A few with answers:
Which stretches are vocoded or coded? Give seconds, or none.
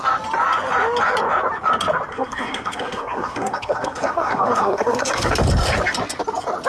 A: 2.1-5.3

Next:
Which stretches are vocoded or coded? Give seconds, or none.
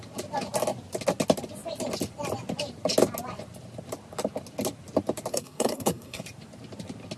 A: 5.3-6.2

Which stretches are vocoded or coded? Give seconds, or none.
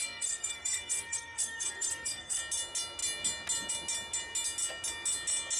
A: 0.0-2.4